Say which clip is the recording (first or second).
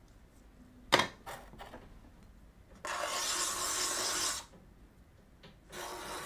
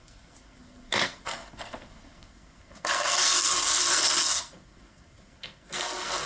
first